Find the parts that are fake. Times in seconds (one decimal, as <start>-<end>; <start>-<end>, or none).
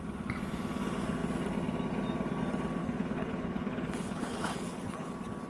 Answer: 2.8-5.1